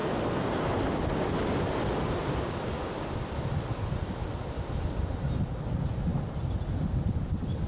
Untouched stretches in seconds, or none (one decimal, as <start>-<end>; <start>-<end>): 0.0-7.7